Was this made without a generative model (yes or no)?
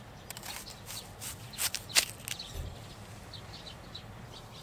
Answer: yes